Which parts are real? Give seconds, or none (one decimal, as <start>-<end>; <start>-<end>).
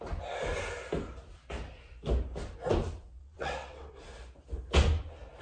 0.0-3.2; 4.0-5.4